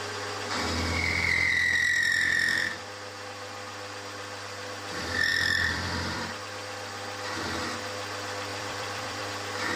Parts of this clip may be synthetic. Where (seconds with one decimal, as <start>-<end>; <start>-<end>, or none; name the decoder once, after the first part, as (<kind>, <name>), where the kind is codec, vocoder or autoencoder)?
5.3-6.3 (vocoder, BigVGAN v2); 8.5-9.3